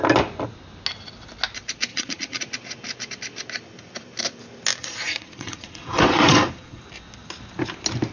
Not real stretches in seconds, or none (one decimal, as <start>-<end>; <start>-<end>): 1.9-2.4; 4.8-6.8

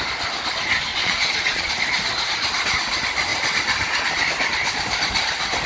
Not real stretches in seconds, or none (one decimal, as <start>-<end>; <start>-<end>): 0.9-1.7

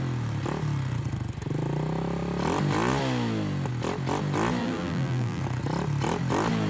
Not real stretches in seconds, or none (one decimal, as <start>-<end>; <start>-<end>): 4.6-5.4

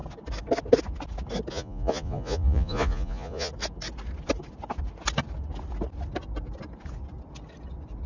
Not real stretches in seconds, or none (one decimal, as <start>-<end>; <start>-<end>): 1.5-3.5

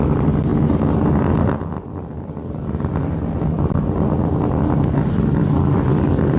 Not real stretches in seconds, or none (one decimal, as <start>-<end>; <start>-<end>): 5.4-6.4

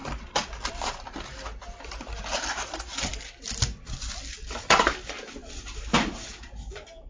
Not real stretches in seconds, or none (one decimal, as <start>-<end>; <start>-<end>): none

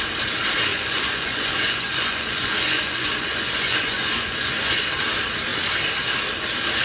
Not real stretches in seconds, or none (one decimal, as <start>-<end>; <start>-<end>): 0.7-4.8